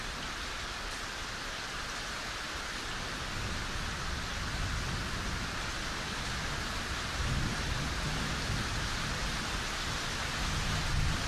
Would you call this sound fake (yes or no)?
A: no